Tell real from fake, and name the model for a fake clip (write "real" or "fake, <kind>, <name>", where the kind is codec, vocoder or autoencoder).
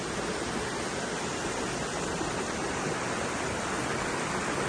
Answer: real